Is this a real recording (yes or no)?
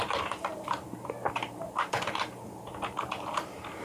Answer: no